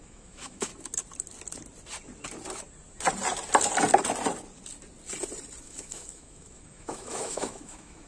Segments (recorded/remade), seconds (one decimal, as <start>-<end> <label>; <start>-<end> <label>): 0.0-0.7 remade; 0.7-5.6 recorded; 5.6-8.1 remade